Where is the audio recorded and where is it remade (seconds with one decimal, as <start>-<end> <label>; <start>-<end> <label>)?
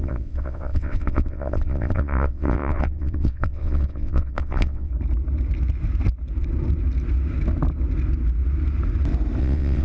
0.0-4.9 remade; 4.9-9.4 recorded; 9.4-9.8 remade